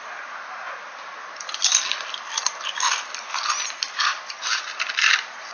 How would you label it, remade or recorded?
recorded